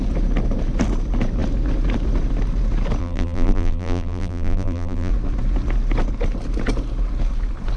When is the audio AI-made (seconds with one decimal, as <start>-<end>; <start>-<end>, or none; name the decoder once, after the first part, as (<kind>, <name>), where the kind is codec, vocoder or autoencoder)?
3.0-5.1 (vocoder, BigVGAN v2)